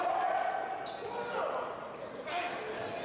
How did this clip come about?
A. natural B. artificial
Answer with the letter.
A